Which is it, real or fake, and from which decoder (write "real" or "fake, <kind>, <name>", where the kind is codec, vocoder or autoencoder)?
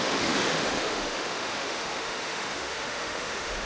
fake, autoencoder, DAC-VAE